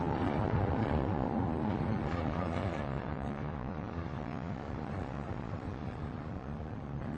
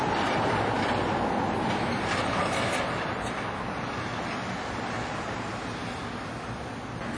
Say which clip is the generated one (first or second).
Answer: first